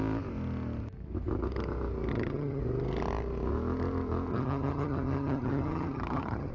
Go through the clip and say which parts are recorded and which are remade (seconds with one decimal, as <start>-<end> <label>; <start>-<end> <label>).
0.0-2.1 recorded; 2.1-2.6 remade; 2.6-4.3 recorded; 4.3-6.5 remade